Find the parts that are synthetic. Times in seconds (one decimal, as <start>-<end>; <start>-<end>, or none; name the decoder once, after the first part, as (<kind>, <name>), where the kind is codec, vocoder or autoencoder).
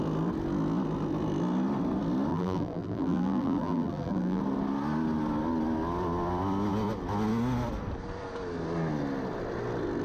2.3-4.4 (vocoder, BigVGAN v2)